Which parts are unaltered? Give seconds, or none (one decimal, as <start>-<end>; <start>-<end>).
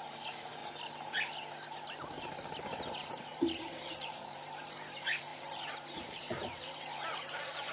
0.6-2.9